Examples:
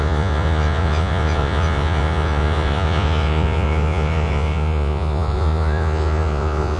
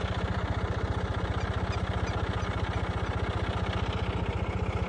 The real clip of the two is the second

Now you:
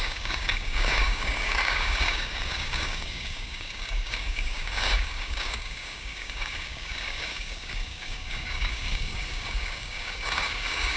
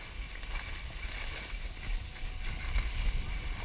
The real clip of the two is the second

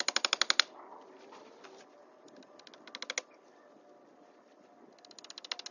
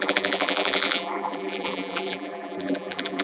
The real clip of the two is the first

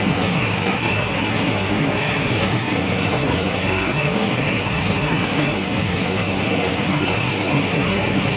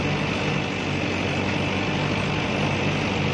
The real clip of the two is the second